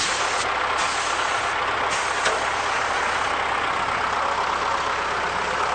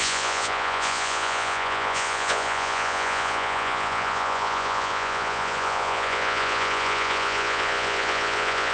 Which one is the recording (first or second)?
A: first